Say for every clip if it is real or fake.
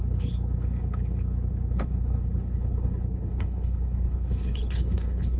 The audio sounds fake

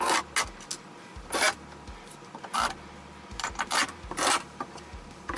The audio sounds real